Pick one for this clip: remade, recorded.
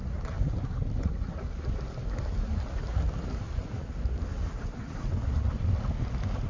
recorded